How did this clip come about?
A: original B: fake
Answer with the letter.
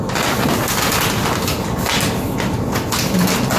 A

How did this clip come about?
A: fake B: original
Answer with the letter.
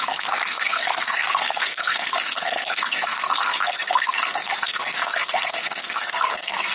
A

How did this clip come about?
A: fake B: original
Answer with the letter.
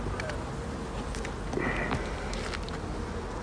B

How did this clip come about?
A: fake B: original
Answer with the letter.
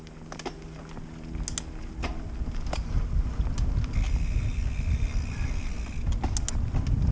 B